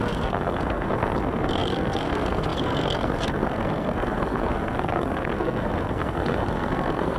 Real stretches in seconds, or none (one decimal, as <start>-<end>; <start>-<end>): none